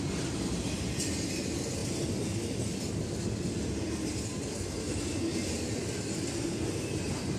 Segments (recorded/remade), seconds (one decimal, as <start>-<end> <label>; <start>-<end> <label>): 0.0-7.4 recorded